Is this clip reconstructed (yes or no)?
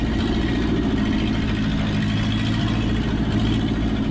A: no